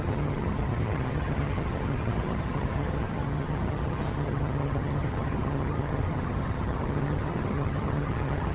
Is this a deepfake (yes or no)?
yes